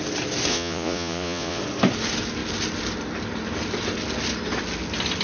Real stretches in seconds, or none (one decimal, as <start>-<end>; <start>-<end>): 0.0-0.5; 1.6-5.2